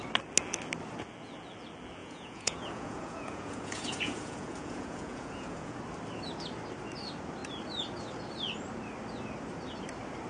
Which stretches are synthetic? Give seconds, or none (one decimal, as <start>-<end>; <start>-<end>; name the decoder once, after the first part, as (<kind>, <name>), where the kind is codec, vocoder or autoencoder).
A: 2.0-5.8 (vocoder, Vocos)

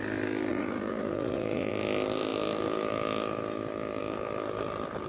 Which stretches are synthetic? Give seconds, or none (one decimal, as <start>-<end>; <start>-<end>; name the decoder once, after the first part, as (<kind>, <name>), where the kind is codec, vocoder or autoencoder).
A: 0.5-1.7 (vocoder, Vocos)

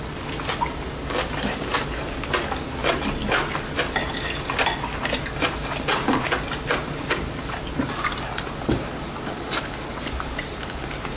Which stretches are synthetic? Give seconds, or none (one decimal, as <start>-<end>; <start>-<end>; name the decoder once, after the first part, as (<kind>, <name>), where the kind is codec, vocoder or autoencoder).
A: none

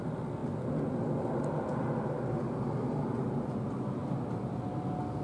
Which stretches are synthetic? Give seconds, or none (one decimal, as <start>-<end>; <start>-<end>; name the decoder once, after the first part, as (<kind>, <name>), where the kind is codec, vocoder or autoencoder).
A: none

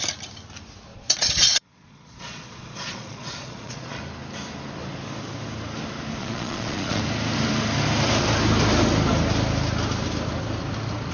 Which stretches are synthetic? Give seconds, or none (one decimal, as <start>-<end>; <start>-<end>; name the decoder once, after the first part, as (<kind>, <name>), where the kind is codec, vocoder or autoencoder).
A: 0.9-4.0 (vocoder, Vocos); 6.2-7.0